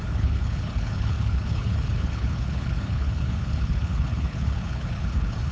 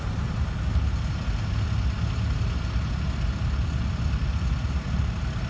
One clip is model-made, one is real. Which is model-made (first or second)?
first